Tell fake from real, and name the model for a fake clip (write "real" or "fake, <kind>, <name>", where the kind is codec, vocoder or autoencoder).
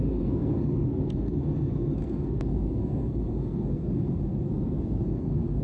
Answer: fake, codec, SNAC